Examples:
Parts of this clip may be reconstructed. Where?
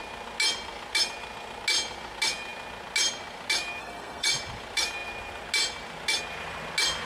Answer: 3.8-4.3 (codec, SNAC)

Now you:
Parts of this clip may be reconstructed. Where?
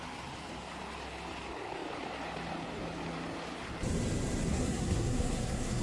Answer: 4.5-5.8 (codec, SNAC)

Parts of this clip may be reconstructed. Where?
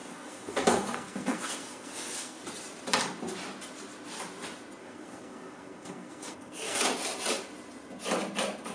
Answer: 0.0-2.4 (codec, SNAC); 4.8-6.8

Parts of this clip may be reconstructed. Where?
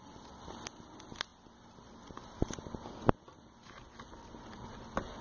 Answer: none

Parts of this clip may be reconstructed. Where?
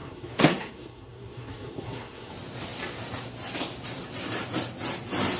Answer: 0.0-2.3 (codec, SNAC)